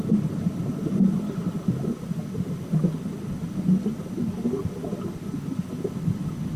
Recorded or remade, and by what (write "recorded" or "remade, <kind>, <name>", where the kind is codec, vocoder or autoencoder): recorded